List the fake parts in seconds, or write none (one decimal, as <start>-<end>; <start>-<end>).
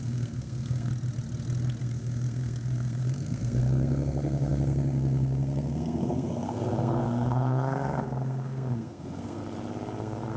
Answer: 0.0-0.9; 1.8-9.4; 10.0-10.4